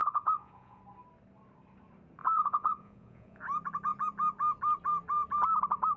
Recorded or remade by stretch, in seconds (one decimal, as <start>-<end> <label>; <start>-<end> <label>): 0.0-0.8 remade; 0.8-2.2 recorded; 2.2-3.4 remade; 3.4-6.0 recorded